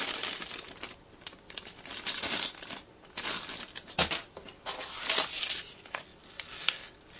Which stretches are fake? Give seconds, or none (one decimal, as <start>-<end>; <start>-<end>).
none